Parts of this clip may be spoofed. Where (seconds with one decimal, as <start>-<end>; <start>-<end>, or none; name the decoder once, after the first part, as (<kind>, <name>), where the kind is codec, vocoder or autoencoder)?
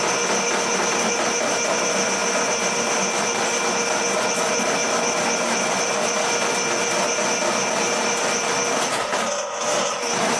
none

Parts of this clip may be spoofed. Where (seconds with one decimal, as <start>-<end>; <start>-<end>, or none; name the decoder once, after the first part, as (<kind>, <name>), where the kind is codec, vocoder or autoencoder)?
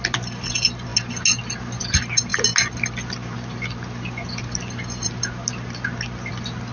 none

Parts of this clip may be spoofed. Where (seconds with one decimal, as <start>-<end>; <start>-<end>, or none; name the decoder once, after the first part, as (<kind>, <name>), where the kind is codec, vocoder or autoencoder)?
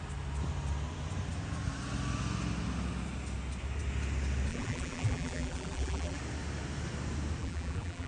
4.5-6.2 (vocoder, BigVGAN v2); 7.4-8.1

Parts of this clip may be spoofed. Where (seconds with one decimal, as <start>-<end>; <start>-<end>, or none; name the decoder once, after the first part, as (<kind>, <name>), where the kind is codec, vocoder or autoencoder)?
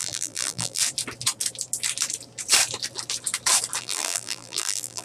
0.0-0.8 (vocoder, BigVGAN v2); 3.8-5.0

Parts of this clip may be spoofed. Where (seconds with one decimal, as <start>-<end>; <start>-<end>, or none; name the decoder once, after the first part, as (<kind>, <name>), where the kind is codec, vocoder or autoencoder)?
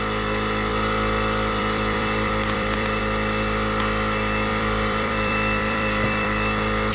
0.7-3.0 (vocoder, BigVGAN v2); 4.5-6.9